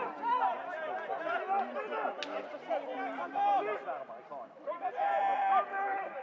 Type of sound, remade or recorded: recorded